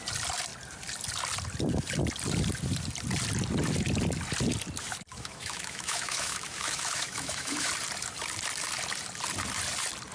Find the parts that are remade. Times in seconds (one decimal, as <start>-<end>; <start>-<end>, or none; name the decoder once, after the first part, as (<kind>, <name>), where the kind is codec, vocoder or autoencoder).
5.1-7.7 (autoencoder, DAC-VAE)